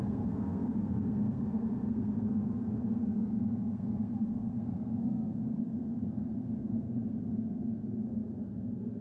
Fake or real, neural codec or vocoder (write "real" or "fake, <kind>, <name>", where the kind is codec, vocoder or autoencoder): fake, codec, SNAC